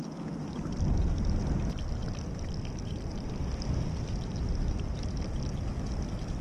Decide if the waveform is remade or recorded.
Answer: recorded